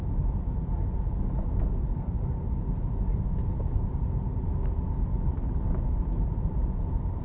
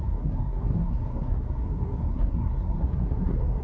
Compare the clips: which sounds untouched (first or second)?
first